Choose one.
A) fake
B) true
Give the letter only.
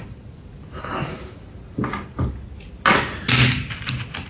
B